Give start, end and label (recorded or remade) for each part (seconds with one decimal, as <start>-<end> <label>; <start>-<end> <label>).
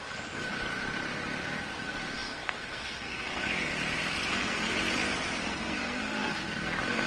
0.0-0.5 remade; 0.5-1.8 recorded; 1.8-3.7 remade; 3.7-4.3 recorded; 4.3-4.7 remade; 4.7-5.4 recorded; 5.4-7.1 remade